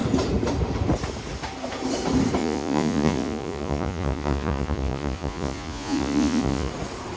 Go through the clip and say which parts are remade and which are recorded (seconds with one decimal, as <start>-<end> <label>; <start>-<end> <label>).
0.0-2.4 recorded; 2.4-6.7 remade; 6.7-7.2 recorded